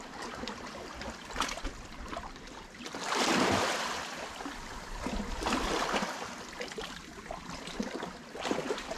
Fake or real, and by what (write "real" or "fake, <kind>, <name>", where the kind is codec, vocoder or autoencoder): real